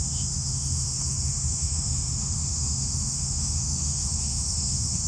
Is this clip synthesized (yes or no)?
yes